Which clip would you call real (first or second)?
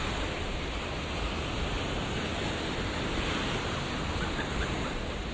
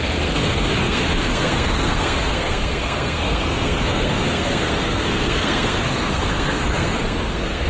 first